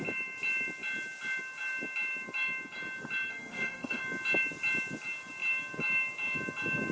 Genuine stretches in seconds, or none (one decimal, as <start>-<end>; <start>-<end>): 0.0-3.3; 4.0-6.9